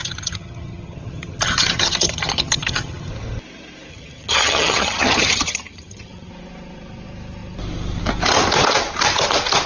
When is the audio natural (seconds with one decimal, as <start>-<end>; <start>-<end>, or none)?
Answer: 3.1-3.9; 6.3-9.7